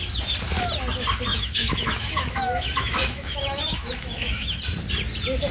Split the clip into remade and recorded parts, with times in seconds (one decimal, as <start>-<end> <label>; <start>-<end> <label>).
0.0-1.3 recorded; 1.3-4.6 remade; 4.6-5.5 recorded